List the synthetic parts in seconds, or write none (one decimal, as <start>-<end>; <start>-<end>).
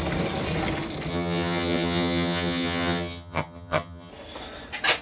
1.1-4.1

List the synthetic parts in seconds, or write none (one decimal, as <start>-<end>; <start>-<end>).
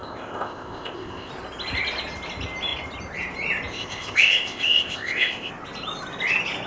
0.0-1.3; 3.7-5.5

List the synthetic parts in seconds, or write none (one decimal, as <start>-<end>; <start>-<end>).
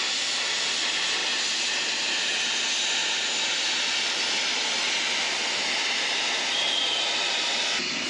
none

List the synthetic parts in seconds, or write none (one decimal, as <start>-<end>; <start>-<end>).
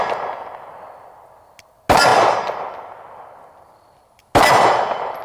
none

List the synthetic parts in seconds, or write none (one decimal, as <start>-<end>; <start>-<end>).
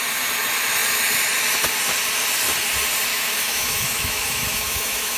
3.1-5.2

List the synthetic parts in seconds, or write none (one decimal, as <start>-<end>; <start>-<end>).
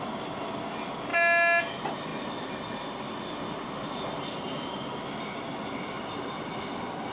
none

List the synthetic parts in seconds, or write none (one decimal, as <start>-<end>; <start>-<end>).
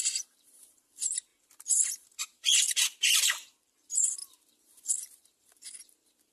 0.0-6.3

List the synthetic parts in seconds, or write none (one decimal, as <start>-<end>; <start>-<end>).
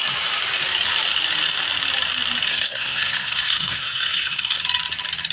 2.5-4.6